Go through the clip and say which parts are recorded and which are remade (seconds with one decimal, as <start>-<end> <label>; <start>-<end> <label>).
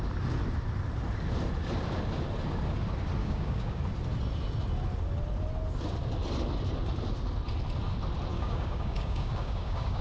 0.0-3.2 recorded; 3.2-3.8 remade; 3.8-8.3 recorded; 8.3-10.0 remade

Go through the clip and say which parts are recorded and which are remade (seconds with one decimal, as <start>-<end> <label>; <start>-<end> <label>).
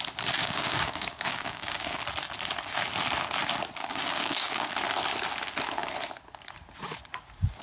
0.0-0.4 recorded; 0.4-2.0 remade; 2.0-3.8 recorded; 3.8-4.7 remade; 4.7-7.6 recorded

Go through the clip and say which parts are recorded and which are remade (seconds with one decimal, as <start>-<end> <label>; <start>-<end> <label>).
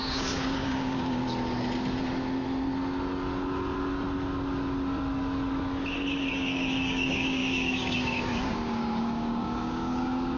0.0-1.2 remade; 1.2-6.3 recorded; 6.3-10.4 remade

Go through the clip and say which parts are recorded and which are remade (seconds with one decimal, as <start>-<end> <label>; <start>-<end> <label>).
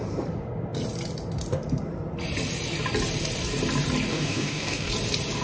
0.0-4.1 recorded; 4.1-4.9 remade; 4.9-5.4 recorded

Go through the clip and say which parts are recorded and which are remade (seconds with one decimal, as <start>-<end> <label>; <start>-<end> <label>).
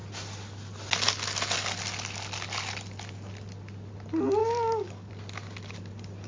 0.0-4.4 recorded; 4.4-5.1 remade; 5.1-6.3 recorded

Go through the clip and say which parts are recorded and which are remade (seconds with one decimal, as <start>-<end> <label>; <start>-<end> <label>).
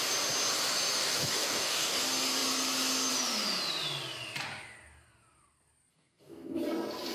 0.0-1.0 recorded; 1.0-2.0 remade; 2.0-5.9 recorded; 5.9-6.6 remade; 6.6-7.1 recorded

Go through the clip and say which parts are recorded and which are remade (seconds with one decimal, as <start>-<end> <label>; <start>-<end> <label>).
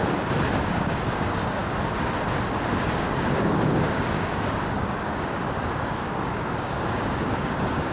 0.0-0.6 recorded; 0.6-1.6 remade; 1.6-2.8 recorded; 2.8-7.9 remade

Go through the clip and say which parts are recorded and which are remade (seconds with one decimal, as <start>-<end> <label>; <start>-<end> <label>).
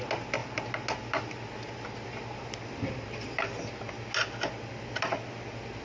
0.0-5.8 recorded